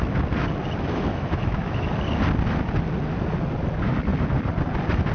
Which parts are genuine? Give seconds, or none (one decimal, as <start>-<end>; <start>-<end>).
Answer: 0.0-1.1; 1.9-5.1